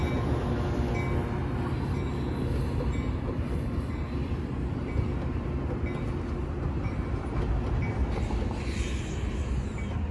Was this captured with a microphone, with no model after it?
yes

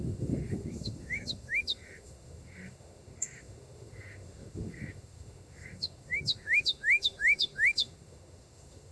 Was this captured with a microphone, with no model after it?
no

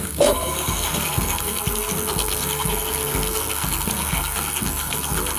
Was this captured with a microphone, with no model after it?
no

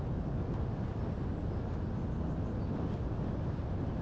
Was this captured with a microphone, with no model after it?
yes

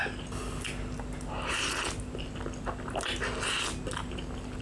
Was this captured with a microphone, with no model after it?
yes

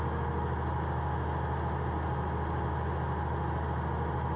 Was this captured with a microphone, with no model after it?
yes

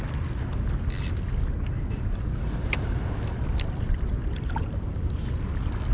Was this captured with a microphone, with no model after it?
yes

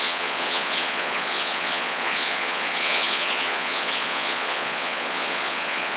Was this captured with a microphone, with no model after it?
no